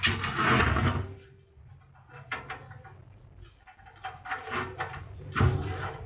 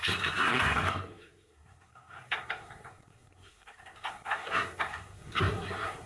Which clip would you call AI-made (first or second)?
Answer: second